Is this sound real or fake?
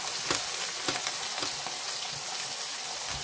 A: real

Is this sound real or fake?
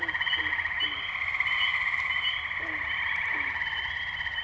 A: real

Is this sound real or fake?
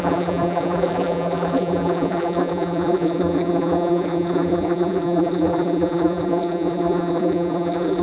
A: fake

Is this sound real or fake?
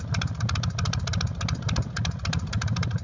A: real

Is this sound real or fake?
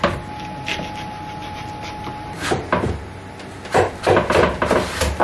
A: real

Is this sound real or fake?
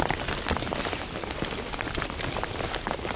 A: real